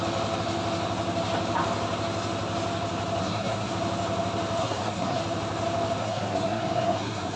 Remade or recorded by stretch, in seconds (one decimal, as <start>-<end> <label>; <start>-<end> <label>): 0.0-3.2 recorded; 3.2-3.7 remade; 3.7-4.6 recorded; 4.6-5.2 remade; 5.2-6.0 recorded; 6.0-7.4 remade